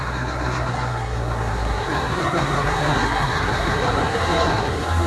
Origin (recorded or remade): remade